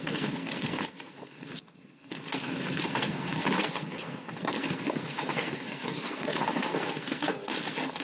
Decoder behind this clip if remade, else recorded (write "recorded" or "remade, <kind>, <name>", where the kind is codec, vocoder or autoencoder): remade, codec, SNAC